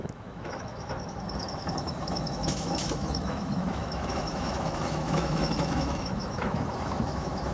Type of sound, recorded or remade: remade